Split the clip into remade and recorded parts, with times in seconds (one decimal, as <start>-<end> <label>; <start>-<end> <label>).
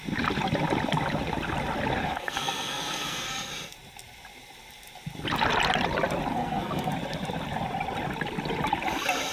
0.0-2.0 recorded; 2.0-3.5 remade; 3.5-6.3 recorded; 6.3-6.9 remade; 6.9-9.3 recorded